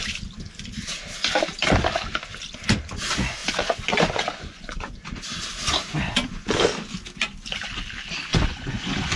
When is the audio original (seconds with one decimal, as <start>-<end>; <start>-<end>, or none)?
0.0-3.4; 4.9-8.3